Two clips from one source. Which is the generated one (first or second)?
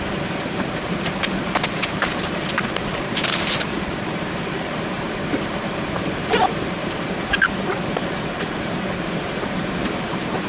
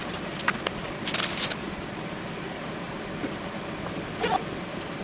first